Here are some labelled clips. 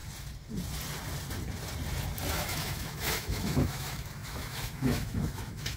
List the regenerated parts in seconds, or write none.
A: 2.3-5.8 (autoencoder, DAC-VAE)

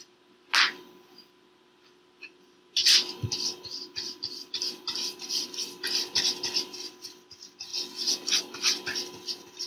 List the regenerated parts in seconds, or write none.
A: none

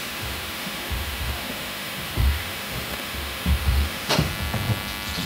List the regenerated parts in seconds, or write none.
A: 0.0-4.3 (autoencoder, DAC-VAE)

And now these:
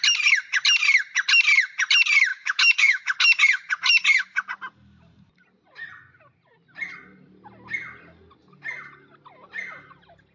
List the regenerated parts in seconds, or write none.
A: 2.3-3.0 (autoencoder, DAC-VAE)

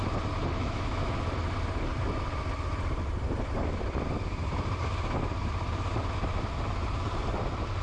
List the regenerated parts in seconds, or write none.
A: 0.6-1.1 (autoencoder, DAC-VAE)

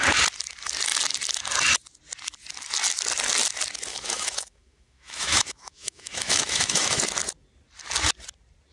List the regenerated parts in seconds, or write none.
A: 3.9-7.0 (autoencoder, DAC-VAE)